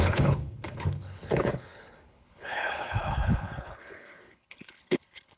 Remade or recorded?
remade